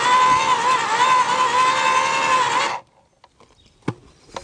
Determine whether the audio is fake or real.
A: real